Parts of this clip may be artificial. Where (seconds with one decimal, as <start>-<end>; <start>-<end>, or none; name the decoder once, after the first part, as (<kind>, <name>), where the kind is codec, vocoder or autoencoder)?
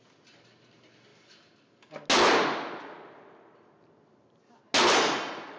none